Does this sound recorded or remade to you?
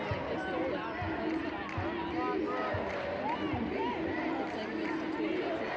recorded